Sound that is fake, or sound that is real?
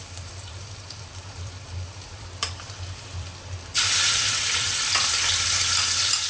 fake